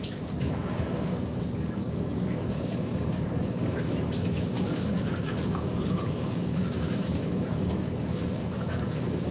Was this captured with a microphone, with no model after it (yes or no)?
no